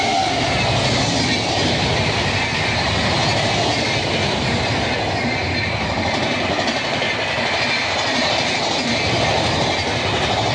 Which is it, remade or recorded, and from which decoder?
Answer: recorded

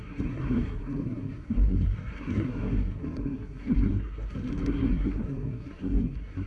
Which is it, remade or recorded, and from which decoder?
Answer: remade, codec, SNAC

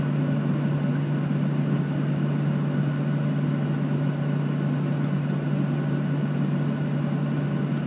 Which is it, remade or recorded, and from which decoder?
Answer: recorded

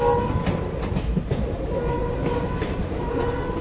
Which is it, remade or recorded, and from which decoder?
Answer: recorded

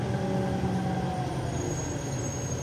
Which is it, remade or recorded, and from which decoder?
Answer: recorded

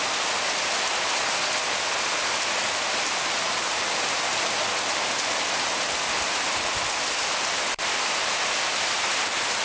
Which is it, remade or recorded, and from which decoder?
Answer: recorded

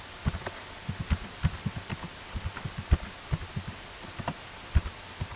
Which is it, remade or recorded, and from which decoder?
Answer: recorded